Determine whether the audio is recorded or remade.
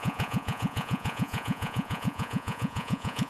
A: remade